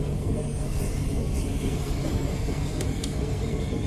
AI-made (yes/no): yes